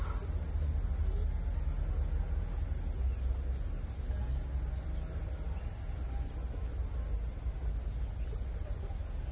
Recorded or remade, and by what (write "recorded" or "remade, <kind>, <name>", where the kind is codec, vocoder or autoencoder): recorded